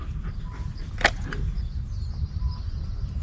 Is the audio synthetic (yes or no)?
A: no